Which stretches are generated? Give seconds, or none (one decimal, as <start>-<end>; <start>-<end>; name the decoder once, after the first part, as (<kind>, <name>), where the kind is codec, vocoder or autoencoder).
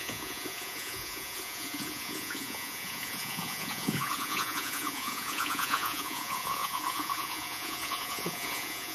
0.0-8.9 (vocoder, Vocos)